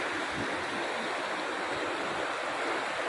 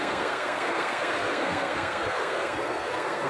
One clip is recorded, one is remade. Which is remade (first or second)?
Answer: second